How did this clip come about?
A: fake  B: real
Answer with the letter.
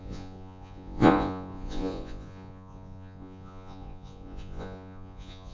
A